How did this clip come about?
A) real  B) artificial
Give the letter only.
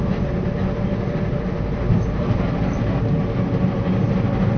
A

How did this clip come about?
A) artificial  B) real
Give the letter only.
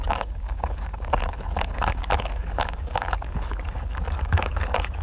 A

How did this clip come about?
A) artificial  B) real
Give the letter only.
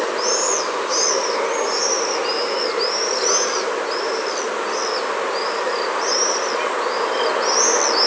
B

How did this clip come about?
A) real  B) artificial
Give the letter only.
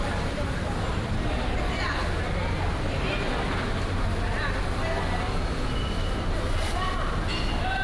A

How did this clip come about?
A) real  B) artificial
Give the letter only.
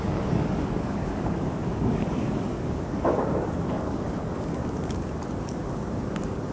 B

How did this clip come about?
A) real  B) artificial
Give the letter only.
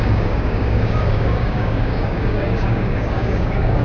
B